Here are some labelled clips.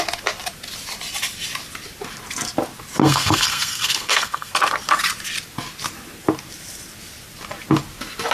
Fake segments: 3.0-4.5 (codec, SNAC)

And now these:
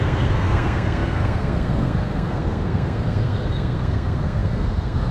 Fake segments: 0.0-5.1 (codec, SNAC)

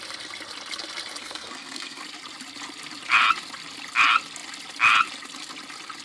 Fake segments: 1.2-2.0 (codec, SNAC)

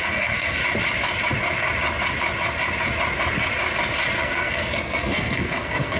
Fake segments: 0.0-0.6 (codec, SNAC); 4.2-6.0

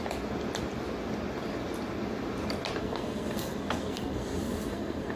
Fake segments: 2.8-5.2 (codec, SNAC)